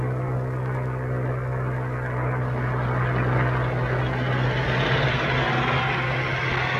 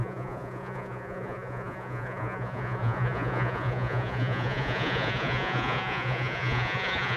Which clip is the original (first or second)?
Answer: first